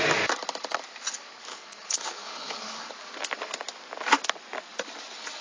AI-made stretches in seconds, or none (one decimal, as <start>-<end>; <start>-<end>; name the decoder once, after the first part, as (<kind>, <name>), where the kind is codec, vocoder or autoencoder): 1.5-2.9 (codec, HILCodec)